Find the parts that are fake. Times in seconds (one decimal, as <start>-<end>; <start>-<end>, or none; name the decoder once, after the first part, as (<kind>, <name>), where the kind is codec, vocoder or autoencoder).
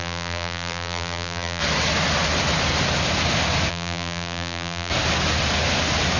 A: 0.0-1.6 (vocoder, BigVGAN v2); 3.7-4.9